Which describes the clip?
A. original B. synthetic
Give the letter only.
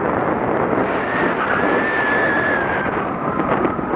A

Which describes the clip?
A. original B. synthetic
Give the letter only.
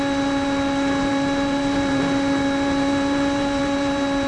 B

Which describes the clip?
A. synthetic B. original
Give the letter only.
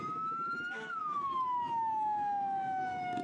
A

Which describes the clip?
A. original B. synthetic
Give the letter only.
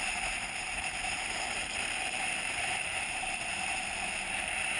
B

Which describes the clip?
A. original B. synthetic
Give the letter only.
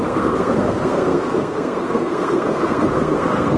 B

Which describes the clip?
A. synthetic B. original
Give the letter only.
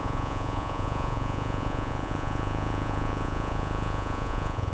A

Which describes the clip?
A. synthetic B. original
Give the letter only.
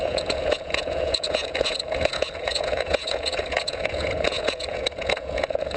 A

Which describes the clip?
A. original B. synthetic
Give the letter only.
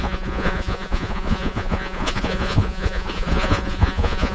B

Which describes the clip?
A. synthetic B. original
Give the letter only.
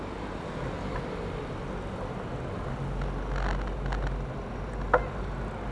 B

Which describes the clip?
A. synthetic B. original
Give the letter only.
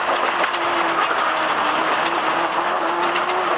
B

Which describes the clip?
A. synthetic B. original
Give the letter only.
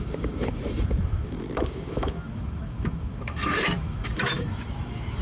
A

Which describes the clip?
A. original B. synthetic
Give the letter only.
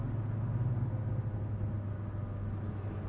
A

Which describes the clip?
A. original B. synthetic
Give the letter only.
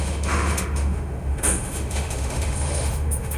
B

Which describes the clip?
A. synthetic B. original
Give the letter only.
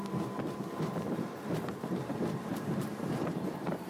A